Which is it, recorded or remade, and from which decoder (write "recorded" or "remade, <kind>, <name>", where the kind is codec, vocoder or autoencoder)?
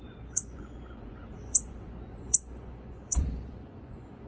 remade, vocoder, Vocos